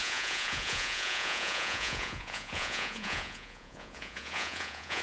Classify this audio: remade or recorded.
remade